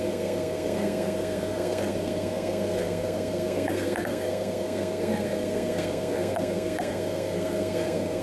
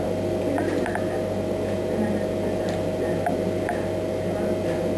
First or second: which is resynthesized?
first